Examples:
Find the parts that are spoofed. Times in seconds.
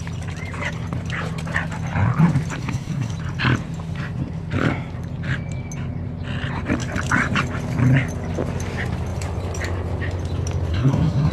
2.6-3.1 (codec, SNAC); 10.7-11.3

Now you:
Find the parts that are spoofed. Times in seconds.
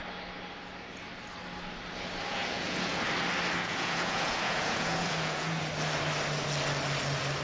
2.3-3.0 (vocoder, Vocos); 3.6-5.6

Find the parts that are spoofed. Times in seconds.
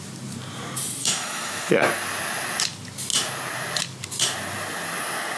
1.0-1.7 (autoencoder, DAC-VAE)